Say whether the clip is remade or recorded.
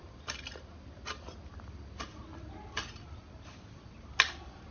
recorded